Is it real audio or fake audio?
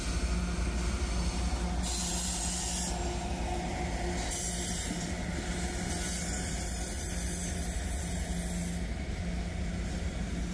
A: real